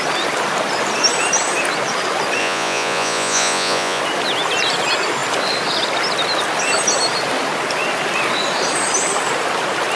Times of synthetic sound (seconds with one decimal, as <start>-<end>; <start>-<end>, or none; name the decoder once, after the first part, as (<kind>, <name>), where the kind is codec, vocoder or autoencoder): 2.4-4.0 (vocoder, Vocos)